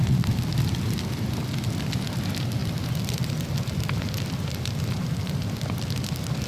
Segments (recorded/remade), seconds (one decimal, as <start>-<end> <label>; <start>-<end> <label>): 0.0-6.5 recorded